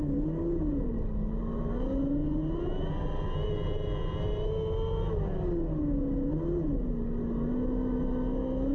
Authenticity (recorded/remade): recorded